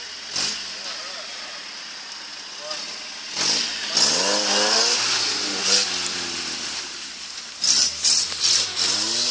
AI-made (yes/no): no